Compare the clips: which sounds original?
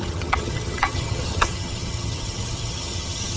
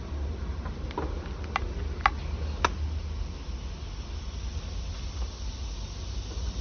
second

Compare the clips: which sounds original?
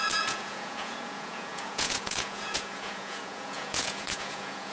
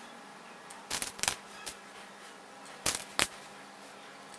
second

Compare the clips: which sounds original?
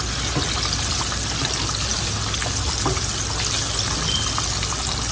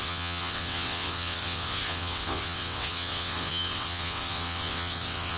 first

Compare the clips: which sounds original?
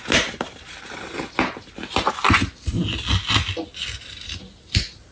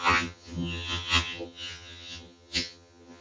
first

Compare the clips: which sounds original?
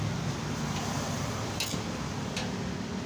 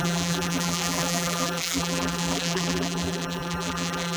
first